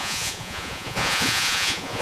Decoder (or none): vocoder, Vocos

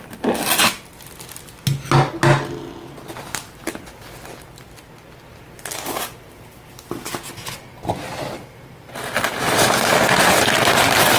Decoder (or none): none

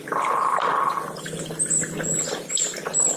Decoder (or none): none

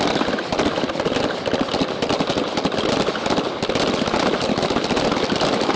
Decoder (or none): none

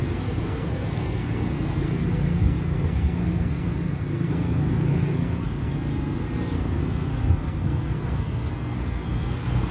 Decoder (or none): codec, SNAC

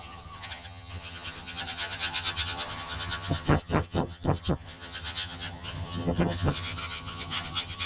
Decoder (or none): vocoder, HiFi-GAN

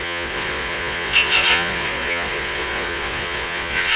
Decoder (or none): vocoder, Vocos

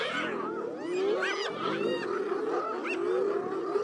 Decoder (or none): none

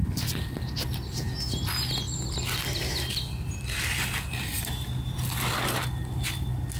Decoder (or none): none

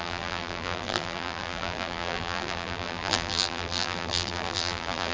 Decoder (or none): vocoder, BigVGAN v2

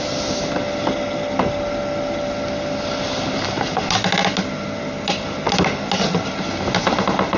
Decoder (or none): none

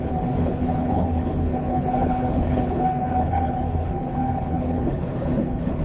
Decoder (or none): codec, HILCodec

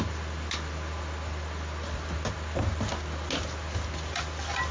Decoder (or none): none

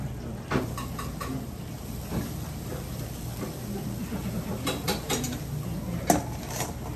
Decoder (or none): none